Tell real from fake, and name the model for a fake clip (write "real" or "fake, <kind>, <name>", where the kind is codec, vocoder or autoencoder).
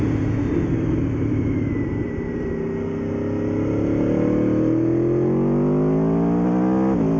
real